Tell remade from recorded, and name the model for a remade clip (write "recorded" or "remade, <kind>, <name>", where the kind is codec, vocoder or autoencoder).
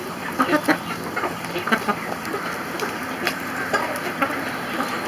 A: recorded